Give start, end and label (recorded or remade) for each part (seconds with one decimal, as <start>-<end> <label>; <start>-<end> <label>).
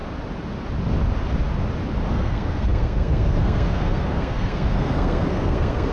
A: 0.0-2.1 recorded; 2.1-5.9 remade